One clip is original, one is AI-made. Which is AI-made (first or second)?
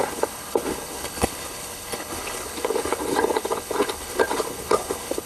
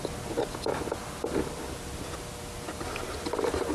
first